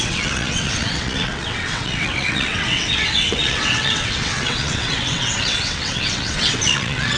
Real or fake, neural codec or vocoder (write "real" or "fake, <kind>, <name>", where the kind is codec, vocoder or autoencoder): fake, vocoder, WaveNeXt